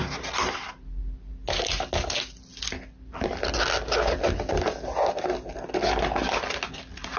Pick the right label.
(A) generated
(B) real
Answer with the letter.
B